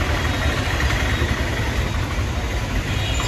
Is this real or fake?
real